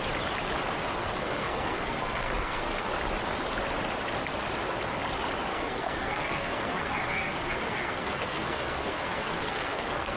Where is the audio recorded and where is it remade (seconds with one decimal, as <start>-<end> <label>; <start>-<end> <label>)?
0.0-1.0 recorded; 1.0-2.9 remade; 2.9-5.5 recorded; 5.5-10.2 remade

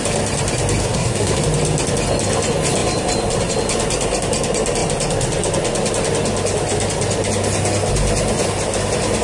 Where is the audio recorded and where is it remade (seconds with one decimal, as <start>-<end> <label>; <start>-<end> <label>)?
0.0-0.8 recorded; 0.8-1.4 remade; 1.4-9.2 recorded